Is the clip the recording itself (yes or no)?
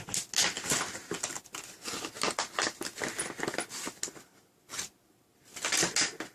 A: yes